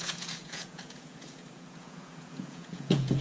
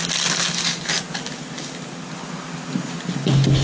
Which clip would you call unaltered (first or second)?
second